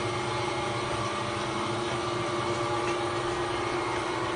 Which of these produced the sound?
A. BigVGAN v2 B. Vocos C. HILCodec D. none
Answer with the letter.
D